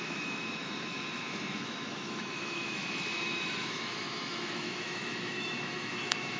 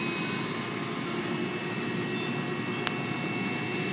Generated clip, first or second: first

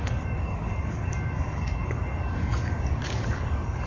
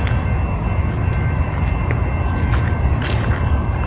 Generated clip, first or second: first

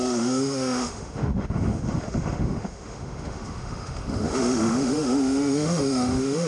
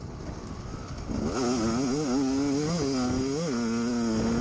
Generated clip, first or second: first